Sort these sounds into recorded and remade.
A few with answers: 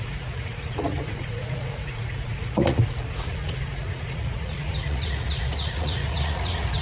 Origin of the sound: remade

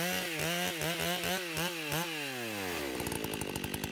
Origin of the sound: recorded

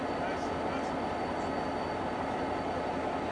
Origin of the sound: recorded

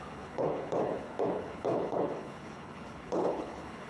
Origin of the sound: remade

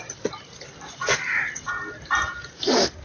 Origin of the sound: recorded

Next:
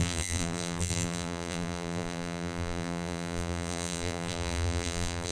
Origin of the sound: remade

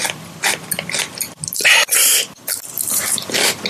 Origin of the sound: recorded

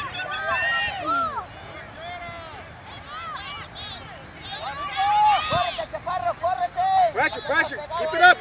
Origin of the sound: recorded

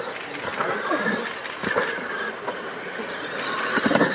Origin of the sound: recorded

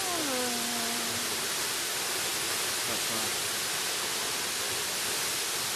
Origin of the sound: recorded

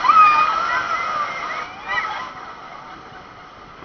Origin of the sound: recorded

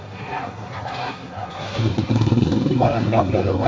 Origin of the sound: remade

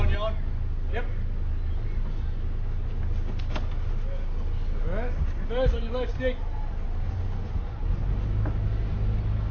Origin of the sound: recorded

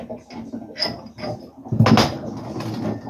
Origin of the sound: recorded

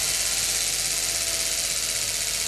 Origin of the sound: recorded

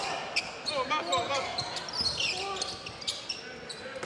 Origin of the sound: recorded